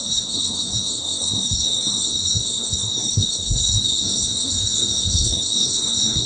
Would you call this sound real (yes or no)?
no